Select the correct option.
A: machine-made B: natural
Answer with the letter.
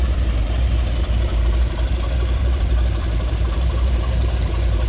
A